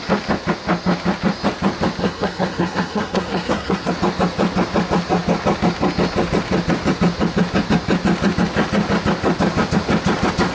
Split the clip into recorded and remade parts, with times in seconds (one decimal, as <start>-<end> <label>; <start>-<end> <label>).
0.0-2.0 recorded; 2.0-3.9 remade; 3.9-10.5 recorded